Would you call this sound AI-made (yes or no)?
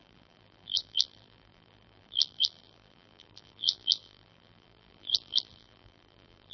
yes